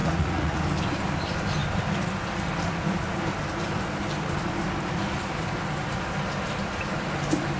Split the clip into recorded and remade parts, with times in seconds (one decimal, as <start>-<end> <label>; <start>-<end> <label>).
0.0-0.6 remade; 0.6-7.6 recorded